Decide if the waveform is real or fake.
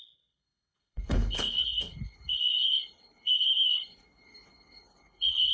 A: fake